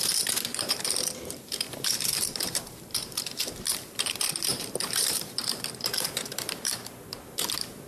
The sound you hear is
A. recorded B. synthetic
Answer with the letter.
B